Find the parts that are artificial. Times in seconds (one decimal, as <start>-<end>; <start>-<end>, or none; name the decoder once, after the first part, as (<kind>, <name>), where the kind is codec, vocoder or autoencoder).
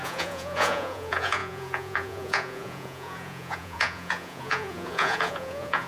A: 0.0-5.9 (vocoder, Vocos)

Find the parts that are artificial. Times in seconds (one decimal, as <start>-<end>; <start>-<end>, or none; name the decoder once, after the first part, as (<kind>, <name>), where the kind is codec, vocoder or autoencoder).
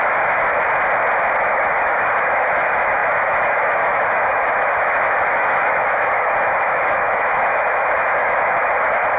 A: 0.0-0.5 (autoencoder, DAC-VAE); 1.4-9.2